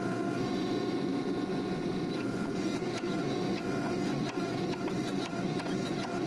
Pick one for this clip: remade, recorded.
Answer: remade